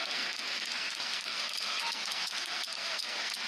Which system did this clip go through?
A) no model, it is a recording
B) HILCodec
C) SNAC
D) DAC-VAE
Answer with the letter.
C